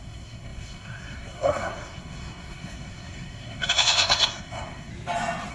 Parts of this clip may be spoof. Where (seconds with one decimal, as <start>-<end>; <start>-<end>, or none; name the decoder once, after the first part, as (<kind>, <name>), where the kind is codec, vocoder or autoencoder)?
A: 0.0-4.9 (codec, SNAC)